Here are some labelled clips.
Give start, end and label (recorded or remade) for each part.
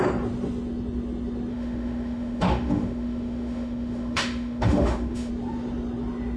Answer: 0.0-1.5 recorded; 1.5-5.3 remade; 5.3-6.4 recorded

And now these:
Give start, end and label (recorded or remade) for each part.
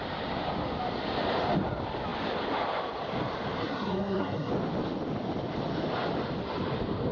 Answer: 0.0-3.6 recorded; 3.6-4.5 remade; 4.5-7.1 recorded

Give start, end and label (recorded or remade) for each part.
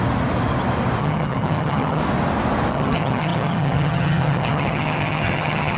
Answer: 0.0-1.0 recorded; 1.0-2.0 remade; 2.0-2.7 recorded; 2.7-5.8 remade